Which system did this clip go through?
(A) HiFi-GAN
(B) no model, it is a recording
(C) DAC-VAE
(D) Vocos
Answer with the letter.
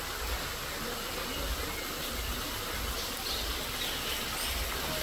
B